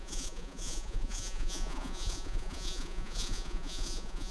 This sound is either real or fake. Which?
fake